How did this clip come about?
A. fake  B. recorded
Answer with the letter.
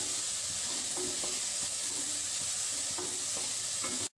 B